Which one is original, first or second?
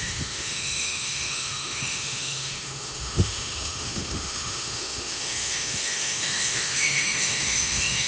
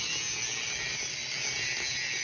second